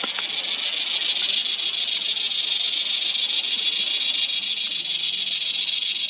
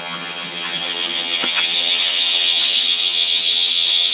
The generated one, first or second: second